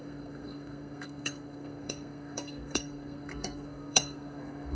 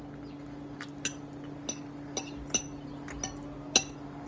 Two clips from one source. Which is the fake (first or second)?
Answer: first